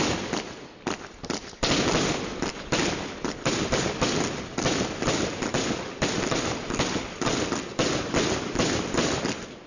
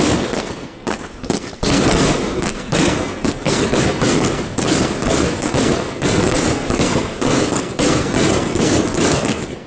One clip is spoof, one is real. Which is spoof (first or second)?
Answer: second